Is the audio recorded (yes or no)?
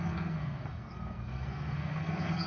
no